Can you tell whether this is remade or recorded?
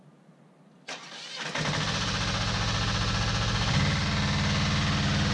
recorded